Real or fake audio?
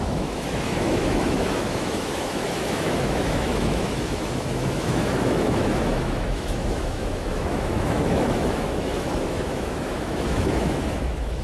fake